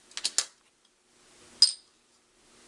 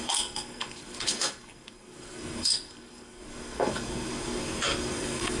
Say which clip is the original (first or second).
first